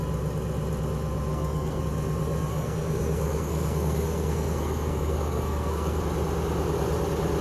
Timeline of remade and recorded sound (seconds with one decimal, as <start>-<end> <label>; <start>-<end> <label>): 0.0-1.3 recorded; 1.3-1.8 remade; 1.8-2.5 recorded; 2.5-6.0 remade; 6.0-7.4 recorded